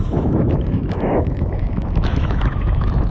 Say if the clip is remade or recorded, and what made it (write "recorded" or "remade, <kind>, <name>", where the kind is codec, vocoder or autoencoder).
remade, autoencoder, DAC-VAE